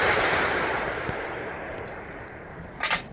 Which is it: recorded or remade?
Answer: remade